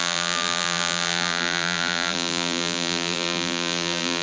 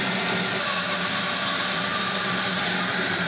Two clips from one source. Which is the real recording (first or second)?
second